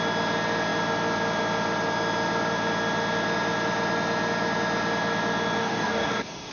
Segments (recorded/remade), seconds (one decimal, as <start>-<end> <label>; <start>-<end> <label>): 0.0-5.6 recorded; 5.6-6.5 remade